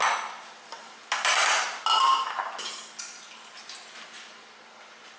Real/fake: real